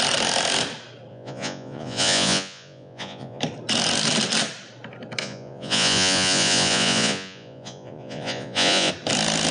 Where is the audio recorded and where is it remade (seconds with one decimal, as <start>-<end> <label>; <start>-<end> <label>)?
0.0-1.1 recorded; 1.1-3.4 remade; 3.4-5.2 recorded; 5.2-8.9 remade; 8.9-9.5 recorded